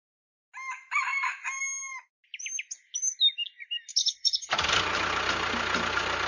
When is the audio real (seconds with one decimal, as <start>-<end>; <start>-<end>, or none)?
0.0-4.0; 4.5-6.3